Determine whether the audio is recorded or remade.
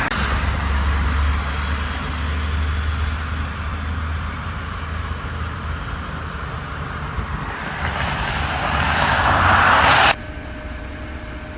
recorded